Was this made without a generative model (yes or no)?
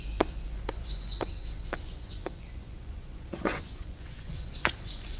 no